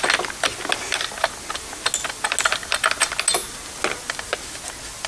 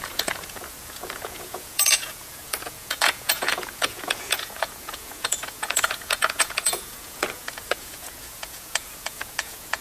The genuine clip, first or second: first